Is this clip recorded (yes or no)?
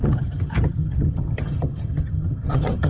no